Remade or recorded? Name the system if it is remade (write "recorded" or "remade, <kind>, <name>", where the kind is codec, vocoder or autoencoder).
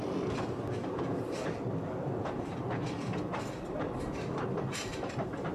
recorded